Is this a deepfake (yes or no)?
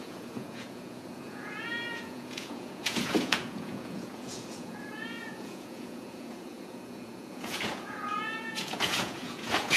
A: yes